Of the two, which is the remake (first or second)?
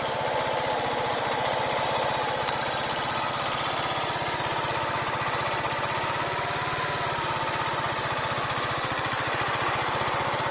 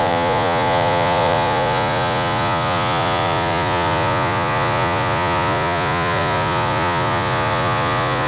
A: second